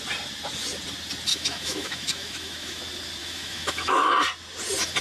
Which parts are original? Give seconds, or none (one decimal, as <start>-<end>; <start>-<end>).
0.0-1.3; 2.8-3.2; 4.1-5.0